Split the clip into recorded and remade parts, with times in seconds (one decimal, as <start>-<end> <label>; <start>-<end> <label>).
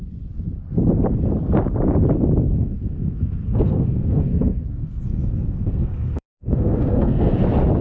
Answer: 0.0-2.6 recorded; 2.6-7.3 remade; 7.3-7.8 recorded